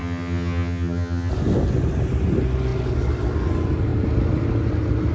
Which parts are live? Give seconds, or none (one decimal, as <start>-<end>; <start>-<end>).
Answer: 1.3-5.1